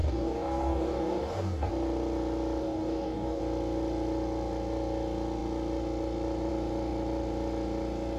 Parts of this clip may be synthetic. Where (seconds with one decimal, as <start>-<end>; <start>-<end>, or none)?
0.0-1.7; 2.6-3.4